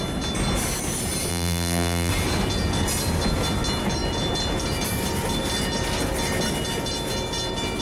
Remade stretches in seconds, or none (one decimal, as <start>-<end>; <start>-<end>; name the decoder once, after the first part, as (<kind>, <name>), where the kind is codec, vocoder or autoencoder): 1.3-2.1 (vocoder, BigVGAN v2)